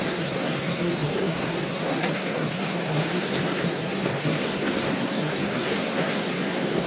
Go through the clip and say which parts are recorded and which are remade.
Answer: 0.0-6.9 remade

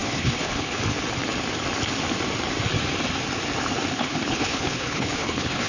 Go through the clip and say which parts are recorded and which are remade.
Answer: 0.0-0.8 remade; 0.8-3.9 recorded; 3.9-5.7 remade

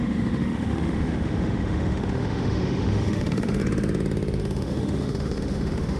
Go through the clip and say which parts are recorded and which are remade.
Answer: 0.0-3.6 remade; 3.6-4.4 recorded; 4.4-6.0 remade

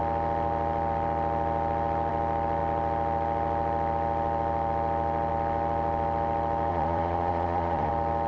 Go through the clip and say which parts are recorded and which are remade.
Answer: 0.0-6.7 recorded; 6.7-7.9 remade; 7.9-8.3 recorded

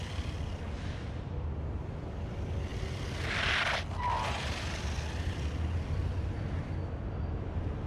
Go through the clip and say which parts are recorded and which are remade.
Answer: 0.0-7.9 recorded